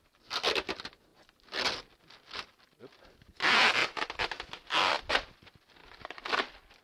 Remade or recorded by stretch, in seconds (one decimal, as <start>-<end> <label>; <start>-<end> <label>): 0.0-6.8 recorded